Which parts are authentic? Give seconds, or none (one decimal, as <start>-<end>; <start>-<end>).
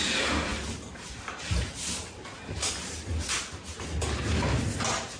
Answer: 0.0-5.2